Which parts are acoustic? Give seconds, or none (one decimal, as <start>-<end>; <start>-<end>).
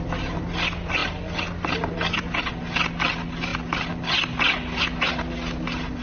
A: 0.0-6.0